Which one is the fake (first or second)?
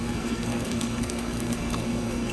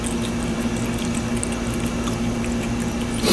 first